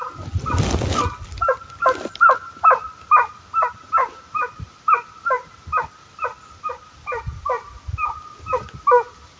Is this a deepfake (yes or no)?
no